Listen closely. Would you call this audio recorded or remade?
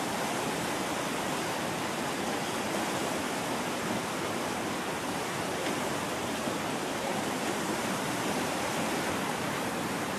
remade